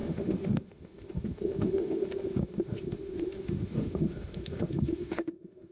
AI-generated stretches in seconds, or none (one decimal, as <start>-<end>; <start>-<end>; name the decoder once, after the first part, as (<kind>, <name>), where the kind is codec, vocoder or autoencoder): 0.0-5.7 (autoencoder, DAC-VAE)